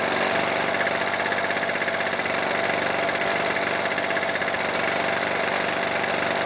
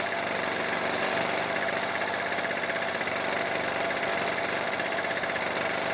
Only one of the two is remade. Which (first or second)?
second